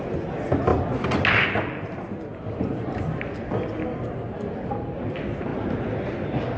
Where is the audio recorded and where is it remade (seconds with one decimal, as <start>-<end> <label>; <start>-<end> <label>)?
0.0-6.6 recorded